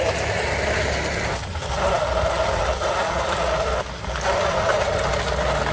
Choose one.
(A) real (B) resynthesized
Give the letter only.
A